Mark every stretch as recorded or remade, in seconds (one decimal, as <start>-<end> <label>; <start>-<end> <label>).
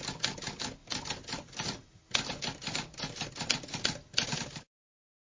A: 0.0-5.4 recorded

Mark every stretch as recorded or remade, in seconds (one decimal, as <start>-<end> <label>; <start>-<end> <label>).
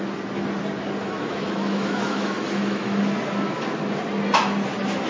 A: 0.0-1.0 recorded; 1.0-3.0 remade; 3.0-5.1 recorded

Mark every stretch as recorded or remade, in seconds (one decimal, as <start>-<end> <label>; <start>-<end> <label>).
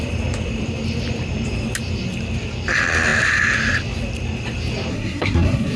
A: 0.0-4.9 recorded; 4.9-5.8 remade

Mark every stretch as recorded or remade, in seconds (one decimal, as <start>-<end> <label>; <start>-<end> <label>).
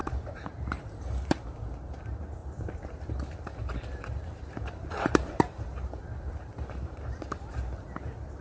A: 0.0-2.0 remade; 2.0-2.4 recorded; 2.4-7.0 remade; 7.0-8.4 recorded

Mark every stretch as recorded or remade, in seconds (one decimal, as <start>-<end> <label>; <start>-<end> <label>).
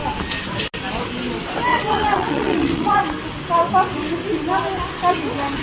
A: 0.0-1.7 recorded; 1.7-3.0 remade; 3.0-5.6 recorded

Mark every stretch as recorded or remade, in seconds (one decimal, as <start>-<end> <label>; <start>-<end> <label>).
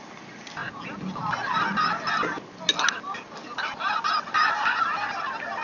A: 0.0-5.6 recorded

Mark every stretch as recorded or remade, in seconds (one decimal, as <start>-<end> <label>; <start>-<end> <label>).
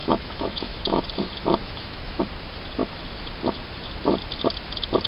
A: 0.0-1.0 remade; 1.0-1.6 recorded; 1.6-2.2 remade; 2.2-5.1 recorded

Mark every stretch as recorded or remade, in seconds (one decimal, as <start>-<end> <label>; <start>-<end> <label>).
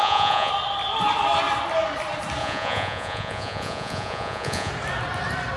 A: 0.0-0.5 remade; 0.5-2.4 recorded; 2.4-4.7 remade; 4.7-5.6 recorded